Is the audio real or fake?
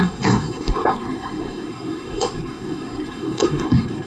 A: fake